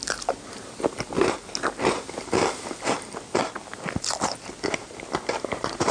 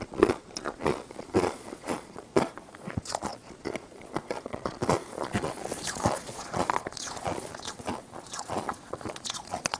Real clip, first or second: first